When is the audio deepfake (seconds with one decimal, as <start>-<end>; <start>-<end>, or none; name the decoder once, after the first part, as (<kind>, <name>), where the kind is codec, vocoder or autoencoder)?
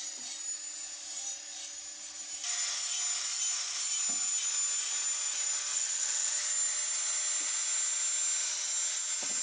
5.7-6.3 (vocoder, WaveNeXt)